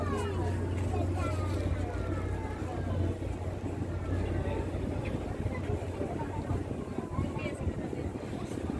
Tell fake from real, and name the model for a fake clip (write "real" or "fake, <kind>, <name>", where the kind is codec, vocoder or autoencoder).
real